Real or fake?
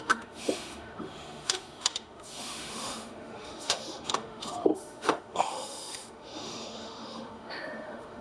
fake